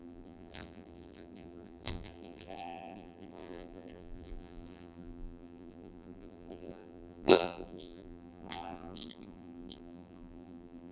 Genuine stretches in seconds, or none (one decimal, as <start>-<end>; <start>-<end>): none